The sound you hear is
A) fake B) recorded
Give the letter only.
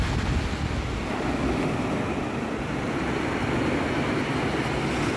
B